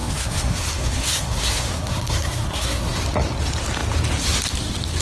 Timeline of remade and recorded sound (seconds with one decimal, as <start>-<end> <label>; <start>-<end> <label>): 0.0-3.0 remade; 3.0-5.0 recorded